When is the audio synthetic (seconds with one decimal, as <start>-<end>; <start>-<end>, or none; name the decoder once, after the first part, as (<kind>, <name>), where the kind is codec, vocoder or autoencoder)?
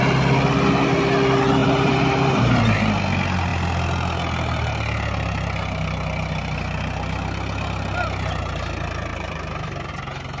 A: 1.6-2.8 (vocoder, BigVGAN v2); 9.1-9.9